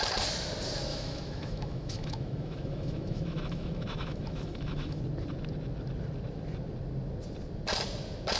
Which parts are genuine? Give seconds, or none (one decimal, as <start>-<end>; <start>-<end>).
0.0-0.9; 5.0-8.4